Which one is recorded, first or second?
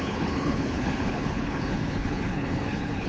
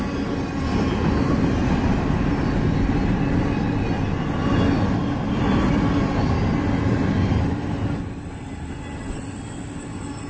second